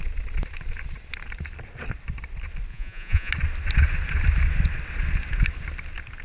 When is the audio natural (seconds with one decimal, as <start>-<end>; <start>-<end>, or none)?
0.0-2.7; 3.3-6.2